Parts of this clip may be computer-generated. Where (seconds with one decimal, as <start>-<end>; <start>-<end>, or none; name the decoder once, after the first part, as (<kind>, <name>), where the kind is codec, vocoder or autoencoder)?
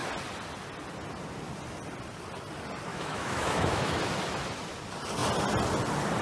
2.9-4.0 (autoencoder, DAC-VAE)